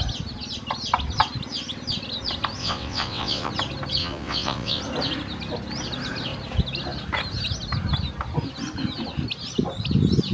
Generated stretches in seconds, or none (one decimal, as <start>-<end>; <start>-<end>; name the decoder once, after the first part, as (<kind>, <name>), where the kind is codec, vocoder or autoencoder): 2.6-3.5 (vocoder, WaveNeXt); 4.0-4.8